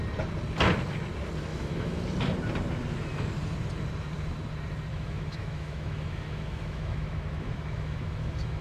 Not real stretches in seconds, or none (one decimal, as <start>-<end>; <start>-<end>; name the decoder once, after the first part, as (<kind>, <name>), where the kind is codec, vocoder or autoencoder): 1.5-2.0 (autoencoder, DAC-VAE); 4.9-8.6